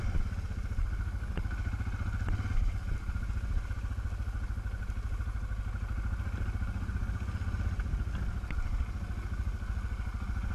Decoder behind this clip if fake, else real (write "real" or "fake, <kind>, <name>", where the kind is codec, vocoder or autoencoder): real